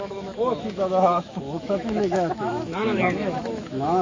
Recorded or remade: remade